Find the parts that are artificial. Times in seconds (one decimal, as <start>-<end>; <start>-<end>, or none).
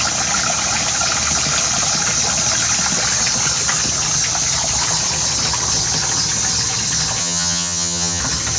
7.2-8.2